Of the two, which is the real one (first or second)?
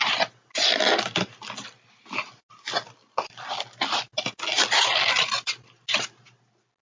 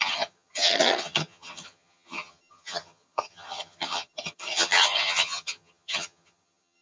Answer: first